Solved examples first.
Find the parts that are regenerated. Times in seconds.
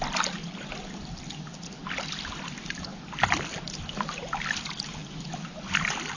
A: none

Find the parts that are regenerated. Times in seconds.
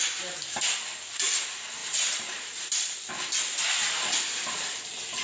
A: none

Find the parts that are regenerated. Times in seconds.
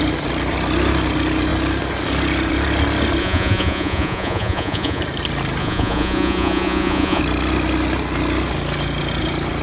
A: 3.2-5.0 (vocoder, Vocos); 5.6-7.2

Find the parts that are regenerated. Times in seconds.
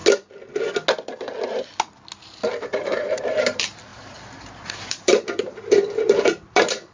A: 3.0-6.9 (vocoder, BigVGAN v2)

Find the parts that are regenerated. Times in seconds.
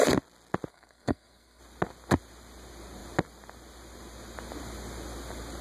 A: 0.7-1.6 (codec, SNAC)